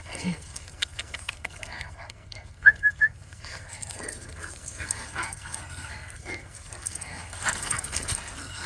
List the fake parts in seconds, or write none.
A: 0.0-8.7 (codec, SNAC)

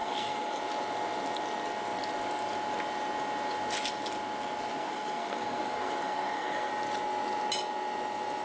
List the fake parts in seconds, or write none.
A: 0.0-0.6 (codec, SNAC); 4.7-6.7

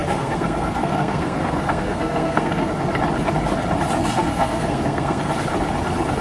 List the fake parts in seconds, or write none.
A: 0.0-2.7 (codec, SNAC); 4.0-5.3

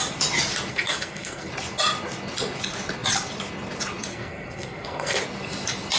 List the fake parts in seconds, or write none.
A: 0.7-1.5 (codec, SNAC); 4.1-5.2

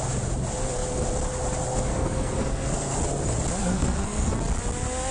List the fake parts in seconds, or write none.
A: 1.9-3.0 (codec, SNAC); 3.6-4.3

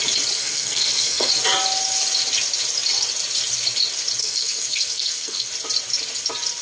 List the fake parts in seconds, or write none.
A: 0.4-1.3 (codec, SNAC); 4.2-5.5

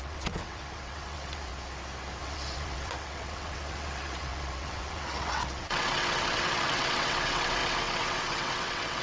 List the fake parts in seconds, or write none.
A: 0.0-1.5 (vocoder, WaveNeXt); 2.2-9.0